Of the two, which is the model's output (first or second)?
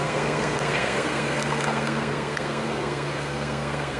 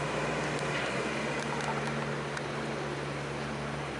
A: first